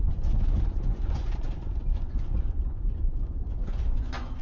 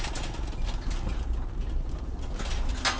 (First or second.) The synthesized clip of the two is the first